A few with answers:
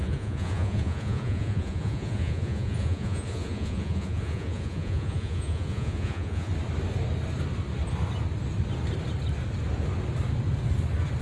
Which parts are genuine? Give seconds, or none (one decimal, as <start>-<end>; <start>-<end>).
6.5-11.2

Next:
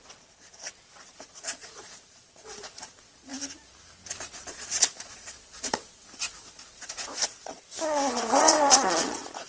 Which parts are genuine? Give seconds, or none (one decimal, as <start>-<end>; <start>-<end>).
3.3-4.1

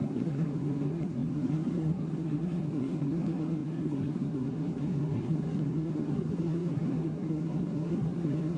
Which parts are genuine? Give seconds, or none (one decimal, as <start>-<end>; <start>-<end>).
none

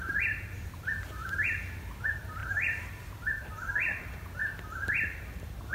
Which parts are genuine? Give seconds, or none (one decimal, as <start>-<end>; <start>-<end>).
1.2-1.7; 4.4-5.7